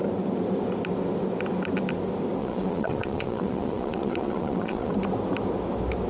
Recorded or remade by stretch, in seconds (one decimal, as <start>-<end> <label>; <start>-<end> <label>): 0.0-2.4 recorded; 2.4-4.9 remade; 4.9-6.1 recorded

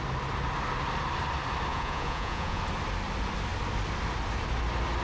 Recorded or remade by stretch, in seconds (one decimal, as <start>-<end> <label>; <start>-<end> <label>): 0.0-1.7 recorded; 1.7-2.6 remade; 2.6-5.0 recorded

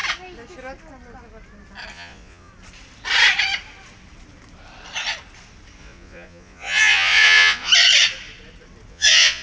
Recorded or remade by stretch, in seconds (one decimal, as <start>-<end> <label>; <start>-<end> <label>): 0.0-1.9 recorded; 1.9-2.5 remade; 2.5-5.8 recorded; 5.8-7.7 remade; 7.7-8.9 recorded; 8.9-9.4 remade

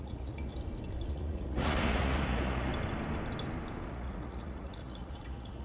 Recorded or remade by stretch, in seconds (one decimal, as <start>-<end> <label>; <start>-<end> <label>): 0.0-0.5 remade; 0.5-1.1 recorded; 1.1-2.7 remade; 2.7-3.9 recorded; 3.9-5.6 remade

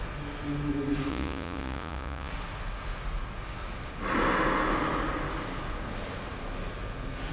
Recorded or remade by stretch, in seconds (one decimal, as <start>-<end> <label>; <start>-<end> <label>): 0.0-1.1 recorded; 1.1-2.3 remade; 2.3-7.3 recorded

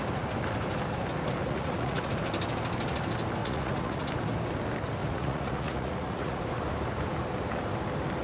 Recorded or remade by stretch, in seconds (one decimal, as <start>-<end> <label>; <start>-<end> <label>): 0.0-1.4 recorded; 1.4-2.1 remade; 2.1-3.4 recorded; 3.4-4.1 remade; 4.1-5.0 recorded; 5.0-6.4 remade; 6.4-8.2 recorded

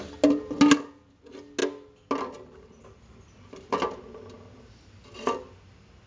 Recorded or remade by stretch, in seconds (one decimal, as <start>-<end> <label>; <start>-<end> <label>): 0.0-6.1 recorded

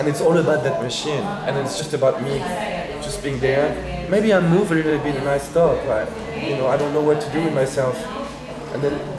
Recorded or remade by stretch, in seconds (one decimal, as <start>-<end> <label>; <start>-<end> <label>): 0.0-1.3 recorded; 1.3-1.8 remade; 1.8-3.1 recorded; 3.1-3.7 remade; 3.7-4.9 recorded; 4.9-8.6 remade; 8.6-9.2 recorded